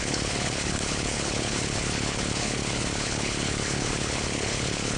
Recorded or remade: remade